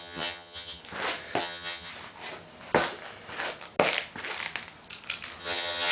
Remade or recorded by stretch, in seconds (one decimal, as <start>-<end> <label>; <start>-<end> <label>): 0.0-0.8 remade; 0.8-1.4 recorded; 1.4-1.9 remade; 1.9-5.4 recorded; 5.4-5.9 remade